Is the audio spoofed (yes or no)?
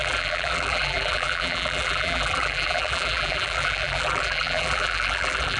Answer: yes